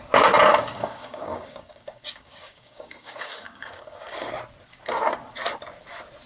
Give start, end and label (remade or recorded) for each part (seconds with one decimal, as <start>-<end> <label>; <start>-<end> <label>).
0.0-0.5 recorded; 0.5-4.3 remade; 4.3-6.3 recorded